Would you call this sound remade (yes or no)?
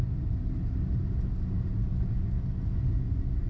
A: no